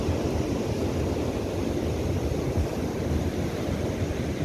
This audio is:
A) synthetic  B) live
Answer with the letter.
B